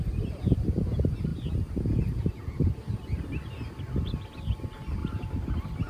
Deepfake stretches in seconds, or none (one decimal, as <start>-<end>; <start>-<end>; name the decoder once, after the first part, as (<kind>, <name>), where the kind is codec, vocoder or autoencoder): none